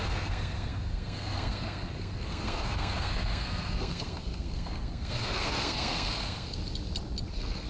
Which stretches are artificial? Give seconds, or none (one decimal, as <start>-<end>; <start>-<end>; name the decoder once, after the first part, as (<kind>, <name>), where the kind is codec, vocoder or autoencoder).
0.0-6.6 (codec, SNAC); 7.3-7.7